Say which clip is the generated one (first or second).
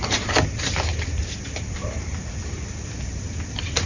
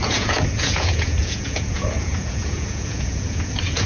second